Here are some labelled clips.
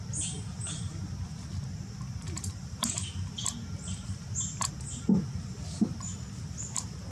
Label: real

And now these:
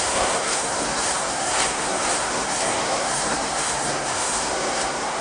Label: fake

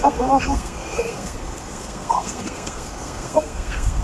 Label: fake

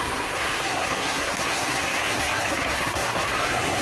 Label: fake